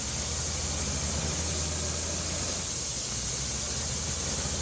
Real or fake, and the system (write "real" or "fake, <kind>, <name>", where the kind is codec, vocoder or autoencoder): real